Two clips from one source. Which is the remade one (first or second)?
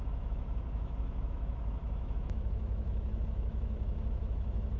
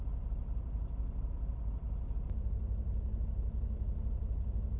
first